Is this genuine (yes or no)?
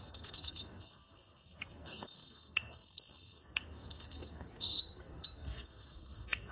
no